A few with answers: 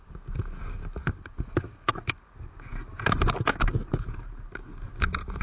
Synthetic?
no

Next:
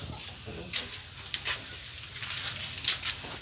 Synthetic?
no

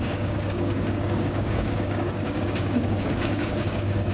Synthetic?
yes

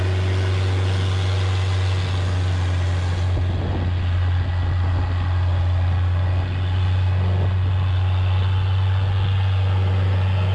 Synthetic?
no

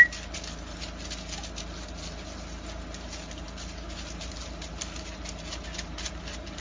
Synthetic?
no